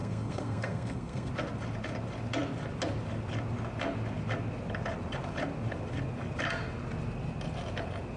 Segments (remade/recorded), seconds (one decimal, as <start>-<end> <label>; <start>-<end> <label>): 0.0-1.3 remade; 1.3-8.2 recorded